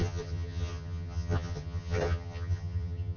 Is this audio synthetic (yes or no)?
yes